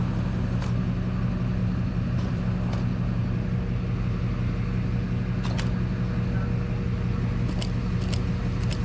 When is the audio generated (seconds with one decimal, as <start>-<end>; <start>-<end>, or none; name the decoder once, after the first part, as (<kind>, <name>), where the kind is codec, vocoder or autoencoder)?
1.6-2.4 (vocoder, BigVGAN v2)